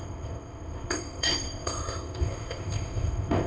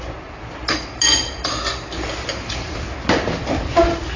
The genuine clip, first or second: second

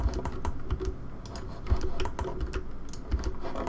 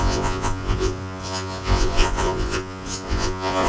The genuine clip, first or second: first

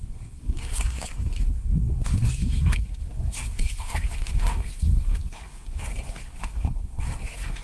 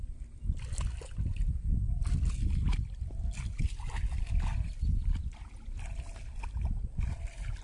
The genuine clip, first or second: second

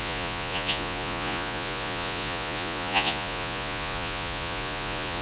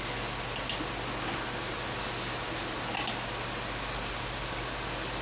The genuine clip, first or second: second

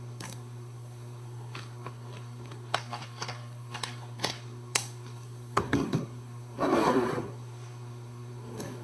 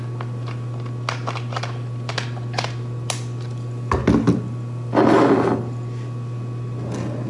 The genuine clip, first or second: second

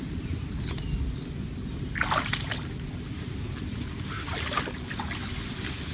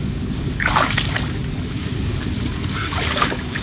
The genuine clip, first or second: first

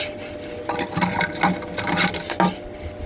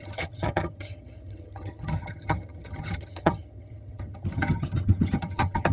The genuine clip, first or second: first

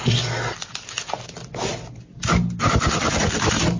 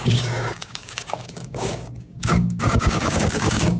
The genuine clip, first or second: first